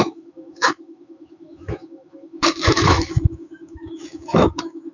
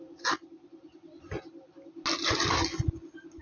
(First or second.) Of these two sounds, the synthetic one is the first